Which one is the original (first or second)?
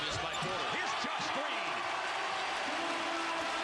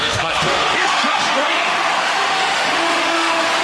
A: first